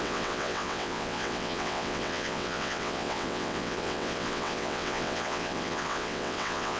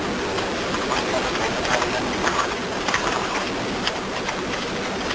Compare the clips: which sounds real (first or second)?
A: second